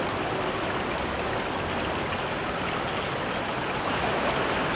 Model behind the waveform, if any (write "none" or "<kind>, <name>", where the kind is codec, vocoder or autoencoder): none